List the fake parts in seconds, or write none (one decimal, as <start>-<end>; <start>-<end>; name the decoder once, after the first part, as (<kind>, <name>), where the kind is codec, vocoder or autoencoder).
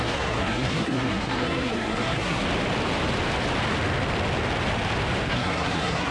0.0-2.4 (codec, SNAC); 5.3-6.1